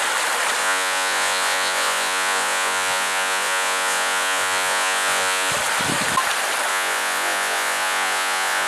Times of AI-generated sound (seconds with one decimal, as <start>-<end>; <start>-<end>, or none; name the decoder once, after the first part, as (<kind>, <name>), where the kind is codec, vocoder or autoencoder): 0.6-5.5 (vocoder, Vocos); 6.7-8.7